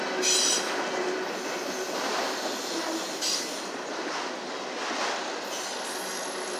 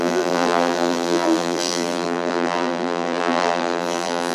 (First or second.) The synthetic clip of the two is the second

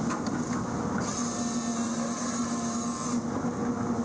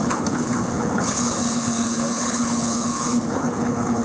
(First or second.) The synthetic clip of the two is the second